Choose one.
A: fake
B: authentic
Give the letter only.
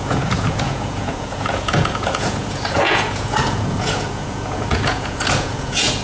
A